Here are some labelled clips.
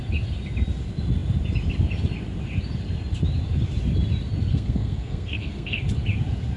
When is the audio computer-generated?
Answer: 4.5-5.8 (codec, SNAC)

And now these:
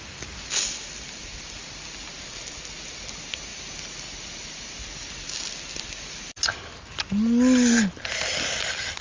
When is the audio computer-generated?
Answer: none

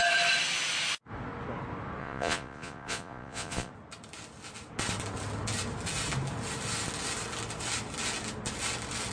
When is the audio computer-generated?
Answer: 2.0-3.7 (vocoder, Vocos)